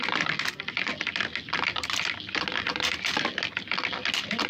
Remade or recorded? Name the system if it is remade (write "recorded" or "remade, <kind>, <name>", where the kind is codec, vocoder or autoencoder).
recorded